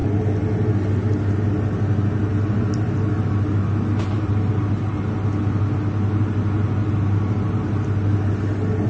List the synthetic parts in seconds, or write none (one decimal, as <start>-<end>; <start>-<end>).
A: none